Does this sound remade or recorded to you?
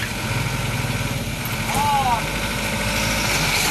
recorded